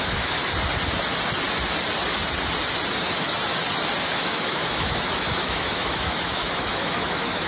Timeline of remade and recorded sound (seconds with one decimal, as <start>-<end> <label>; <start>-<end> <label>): 0.0-0.4 remade; 0.4-4.0 recorded; 4.0-7.5 remade

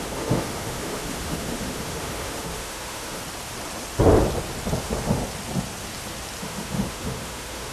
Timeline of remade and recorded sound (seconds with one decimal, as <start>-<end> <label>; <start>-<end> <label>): 0.0-3.2 remade; 3.2-4.8 recorded; 4.8-5.2 remade; 5.2-6.4 recorded; 6.4-7.7 remade

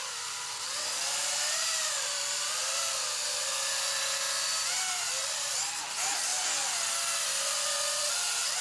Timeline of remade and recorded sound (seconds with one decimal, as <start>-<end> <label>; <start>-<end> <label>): 0.0-6.3 remade; 6.3-8.1 recorded; 8.1-8.6 remade